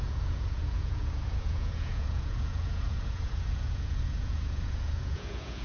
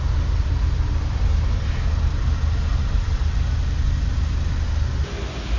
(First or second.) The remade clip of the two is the first